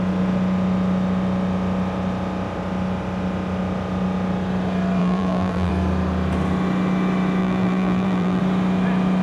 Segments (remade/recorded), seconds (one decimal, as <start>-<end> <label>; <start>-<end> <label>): 0.0-5.0 recorded; 5.0-5.7 remade; 5.7-7.4 recorded; 7.4-8.4 remade; 8.4-9.2 recorded